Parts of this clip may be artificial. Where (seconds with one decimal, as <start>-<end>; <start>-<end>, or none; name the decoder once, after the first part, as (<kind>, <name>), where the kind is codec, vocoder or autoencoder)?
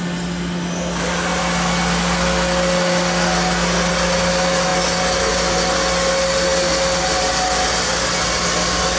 none